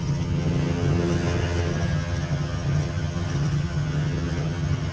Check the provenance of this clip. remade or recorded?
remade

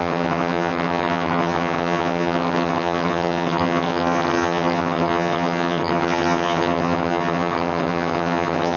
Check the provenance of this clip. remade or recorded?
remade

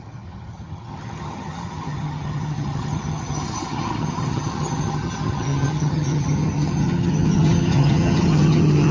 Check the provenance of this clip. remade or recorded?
remade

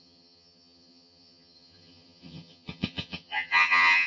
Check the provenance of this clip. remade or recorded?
remade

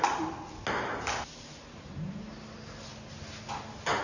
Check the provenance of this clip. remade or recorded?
recorded